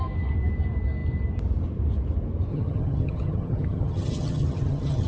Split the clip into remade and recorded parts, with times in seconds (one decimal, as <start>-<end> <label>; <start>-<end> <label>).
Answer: 0.0-2.5 recorded; 2.5-5.1 remade